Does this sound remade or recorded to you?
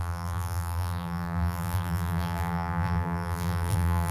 remade